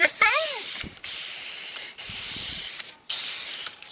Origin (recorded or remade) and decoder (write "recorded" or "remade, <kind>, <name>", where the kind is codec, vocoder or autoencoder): remade, vocoder, BigVGAN v2